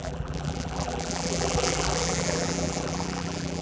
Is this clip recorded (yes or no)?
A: no